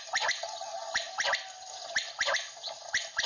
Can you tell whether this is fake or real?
real